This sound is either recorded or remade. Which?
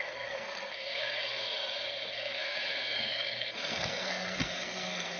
remade